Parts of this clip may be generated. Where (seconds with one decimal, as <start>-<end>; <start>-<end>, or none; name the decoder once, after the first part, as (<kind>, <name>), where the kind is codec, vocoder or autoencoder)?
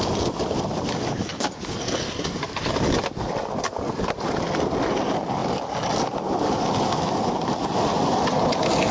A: none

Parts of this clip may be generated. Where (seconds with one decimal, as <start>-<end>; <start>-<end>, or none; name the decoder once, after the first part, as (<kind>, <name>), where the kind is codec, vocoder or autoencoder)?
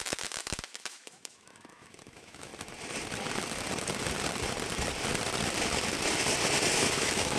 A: 0.0-2.5 (autoencoder, DAC-VAE); 6.7-7.4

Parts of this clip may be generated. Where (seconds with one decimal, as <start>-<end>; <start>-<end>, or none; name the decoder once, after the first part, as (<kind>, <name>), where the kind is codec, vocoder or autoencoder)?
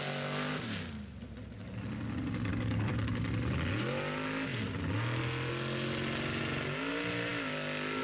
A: 2.5-3.2 (codec, DAC)